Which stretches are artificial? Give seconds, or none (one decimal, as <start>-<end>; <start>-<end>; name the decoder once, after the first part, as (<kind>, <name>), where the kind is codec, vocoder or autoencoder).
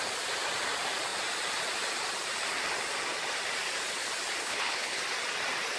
4.4-5.0 (codec, HILCodec)